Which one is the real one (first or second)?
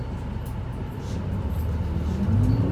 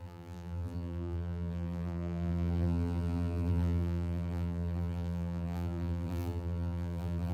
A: first